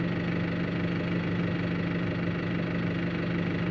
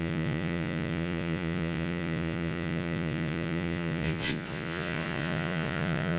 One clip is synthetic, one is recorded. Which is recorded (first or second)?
first